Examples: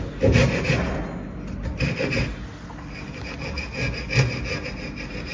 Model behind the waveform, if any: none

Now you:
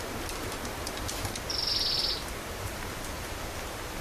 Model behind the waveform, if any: none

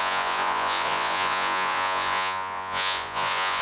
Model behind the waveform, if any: vocoder, Vocos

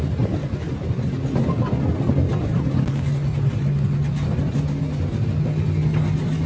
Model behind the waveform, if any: none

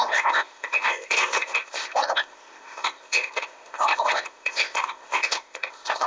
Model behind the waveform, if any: codec, ZipCodec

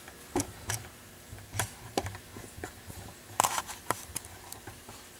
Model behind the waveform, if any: vocoder, BigVGAN v2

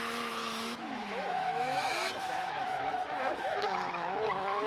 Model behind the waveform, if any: autoencoder, DAC-VAE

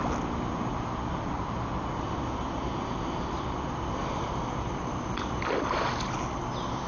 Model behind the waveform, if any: none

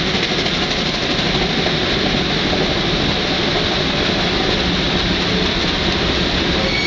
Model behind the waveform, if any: none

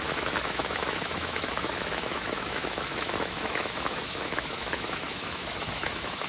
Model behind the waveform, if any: autoencoder, DAC-VAE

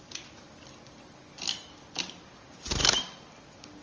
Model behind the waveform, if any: none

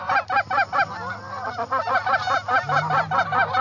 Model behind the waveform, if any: none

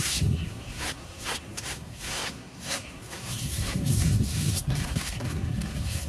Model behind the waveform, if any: codec, SNAC